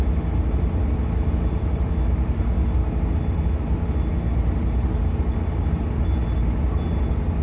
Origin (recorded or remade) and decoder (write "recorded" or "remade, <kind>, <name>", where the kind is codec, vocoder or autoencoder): recorded